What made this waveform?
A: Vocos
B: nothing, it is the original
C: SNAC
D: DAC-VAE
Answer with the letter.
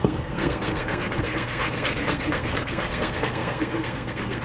C